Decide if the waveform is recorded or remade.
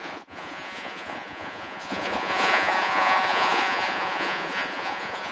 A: remade